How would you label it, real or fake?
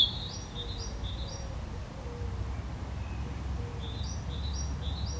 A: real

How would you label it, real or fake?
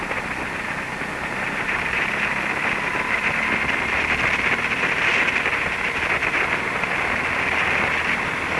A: real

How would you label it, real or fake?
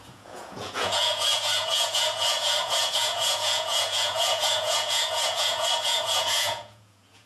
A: fake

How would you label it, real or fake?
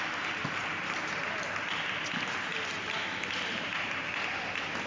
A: real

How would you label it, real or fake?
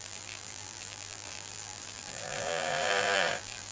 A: fake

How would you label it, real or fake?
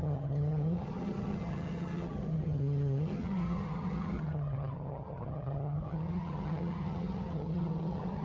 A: fake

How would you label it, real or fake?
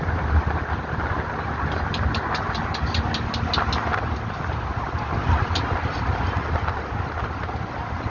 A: real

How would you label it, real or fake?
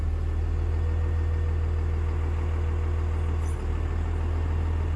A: real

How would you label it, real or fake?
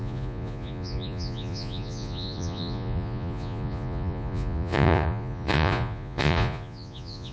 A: fake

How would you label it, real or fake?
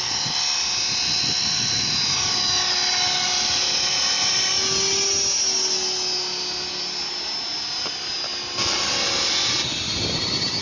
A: real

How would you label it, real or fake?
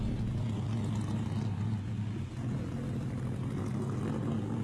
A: real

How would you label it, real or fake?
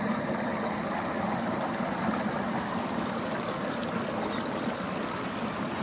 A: real